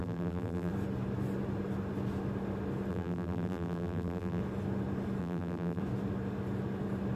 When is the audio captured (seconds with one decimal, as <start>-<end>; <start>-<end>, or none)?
0.7-2.9; 4.4-5.2; 5.8-7.2